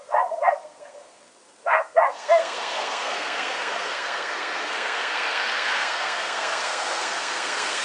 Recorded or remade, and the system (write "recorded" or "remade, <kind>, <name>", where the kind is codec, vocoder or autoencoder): remade, codec, SNAC